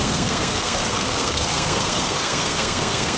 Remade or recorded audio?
remade